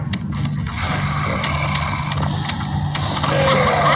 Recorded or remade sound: recorded